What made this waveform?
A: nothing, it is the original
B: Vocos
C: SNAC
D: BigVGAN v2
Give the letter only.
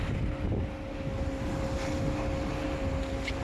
A